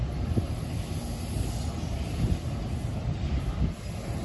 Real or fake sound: real